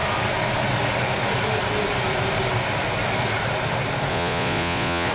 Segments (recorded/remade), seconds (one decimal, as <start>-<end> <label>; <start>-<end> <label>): 0.0-4.1 recorded; 4.1-5.1 remade